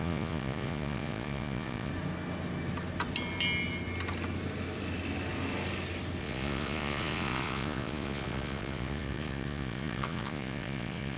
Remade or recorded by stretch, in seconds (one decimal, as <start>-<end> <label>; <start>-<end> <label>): 0.0-1.9 remade; 1.9-6.2 recorded; 6.2-11.2 remade